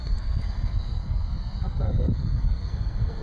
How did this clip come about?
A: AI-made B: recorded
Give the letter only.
A